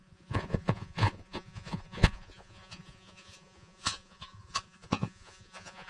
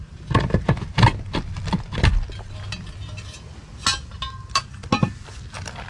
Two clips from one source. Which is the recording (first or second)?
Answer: second